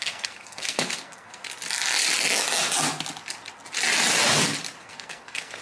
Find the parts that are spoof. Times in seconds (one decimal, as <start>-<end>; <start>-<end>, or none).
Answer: 0.0-1.4; 4.8-5.6